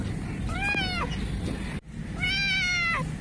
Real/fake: real